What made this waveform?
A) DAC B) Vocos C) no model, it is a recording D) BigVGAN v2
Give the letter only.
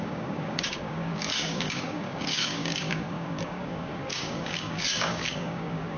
A